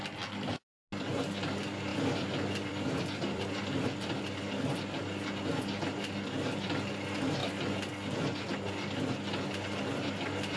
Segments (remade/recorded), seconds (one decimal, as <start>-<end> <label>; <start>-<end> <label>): 0.0-1.9 recorded; 1.9-4.2 remade; 4.2-10.6 recorded